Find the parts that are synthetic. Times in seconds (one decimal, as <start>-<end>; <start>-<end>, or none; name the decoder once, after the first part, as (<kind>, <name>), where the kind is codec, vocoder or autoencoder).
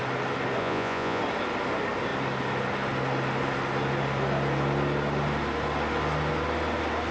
0.6-1.2 (vocoder, Vocos)